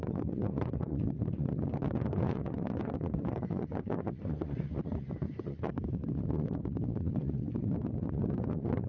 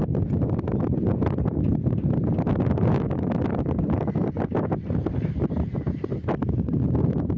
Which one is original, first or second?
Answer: second